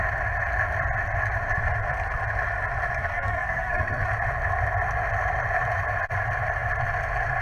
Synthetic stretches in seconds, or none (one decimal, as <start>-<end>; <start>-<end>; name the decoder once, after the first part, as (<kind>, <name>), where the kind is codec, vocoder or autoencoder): 3.0-4.1 (codec, SNAC)